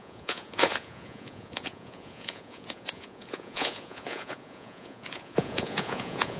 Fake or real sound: fake